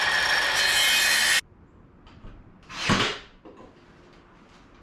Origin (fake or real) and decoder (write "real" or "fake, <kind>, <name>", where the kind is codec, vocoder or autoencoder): real